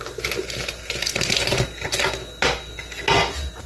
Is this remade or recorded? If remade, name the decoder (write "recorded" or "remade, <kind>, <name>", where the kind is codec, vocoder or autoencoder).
recorded